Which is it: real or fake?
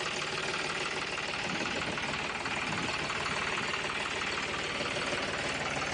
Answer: real